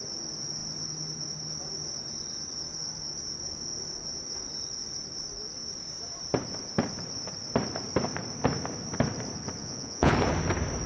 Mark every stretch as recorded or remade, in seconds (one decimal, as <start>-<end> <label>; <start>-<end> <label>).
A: 0.0-9.6 recorded; 9.6-10.1 remade; 10.1-10.9 recorded